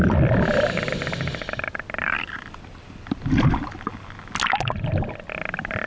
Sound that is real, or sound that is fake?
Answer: real